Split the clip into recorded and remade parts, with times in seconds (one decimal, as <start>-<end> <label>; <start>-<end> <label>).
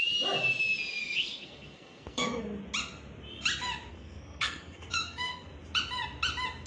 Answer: 0.0-1.0 recorded; 1.0-2.4 remade; 2.4-3.9 recorded; 3.9-5.5 remade; 5.5-6.7 recorded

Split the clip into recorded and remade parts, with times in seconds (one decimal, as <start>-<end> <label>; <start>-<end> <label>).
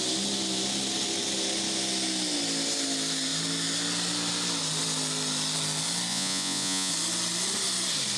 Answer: 0.0-6.1 recorded; 6.1-6.9 remade; 6.9-8.2 recorded